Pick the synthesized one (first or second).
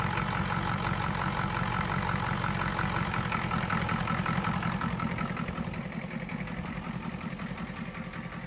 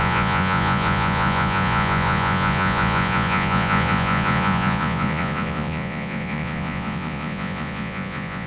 second